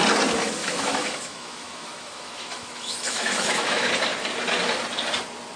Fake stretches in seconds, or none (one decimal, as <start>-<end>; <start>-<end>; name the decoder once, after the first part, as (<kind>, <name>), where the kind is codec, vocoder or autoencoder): 0.6-3.9 (autoencoder, DAC-VAE)